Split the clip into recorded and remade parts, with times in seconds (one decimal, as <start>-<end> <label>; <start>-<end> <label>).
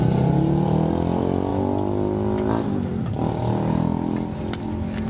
0.0-5.1 recorded